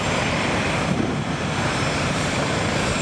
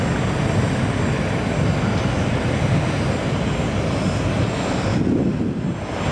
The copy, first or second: first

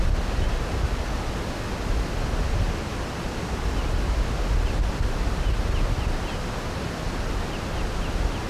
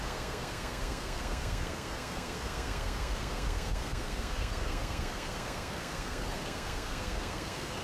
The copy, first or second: second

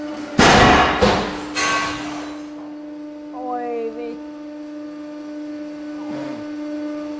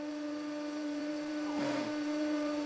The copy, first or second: second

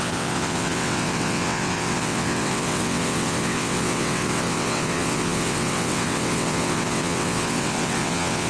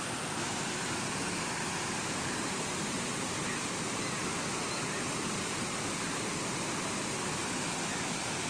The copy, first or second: first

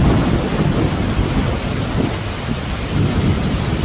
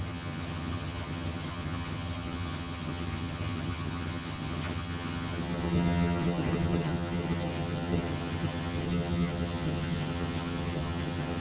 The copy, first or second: second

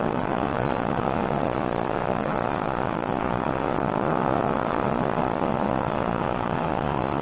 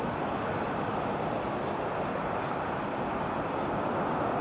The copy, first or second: first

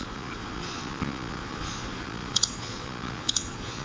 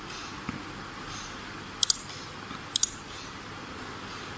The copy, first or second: first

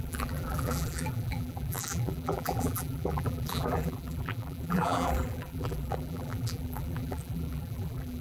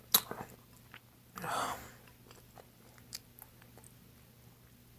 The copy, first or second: first